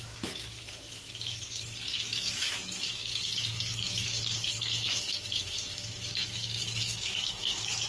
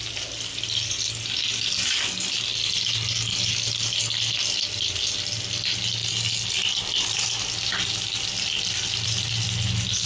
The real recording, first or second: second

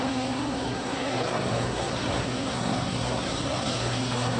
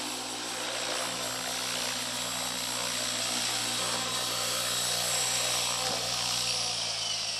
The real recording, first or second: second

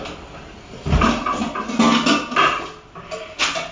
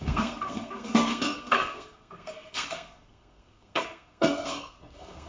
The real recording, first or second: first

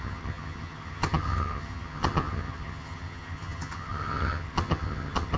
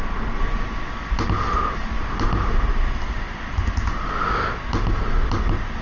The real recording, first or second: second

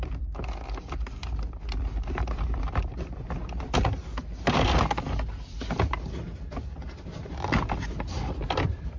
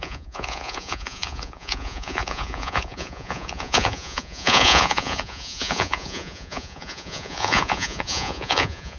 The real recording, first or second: first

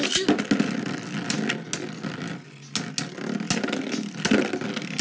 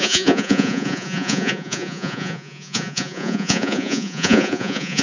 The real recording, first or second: first